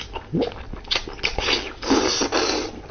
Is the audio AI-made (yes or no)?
no